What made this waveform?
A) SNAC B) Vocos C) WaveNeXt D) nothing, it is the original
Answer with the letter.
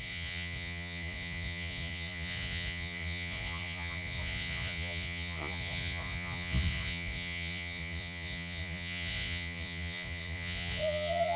B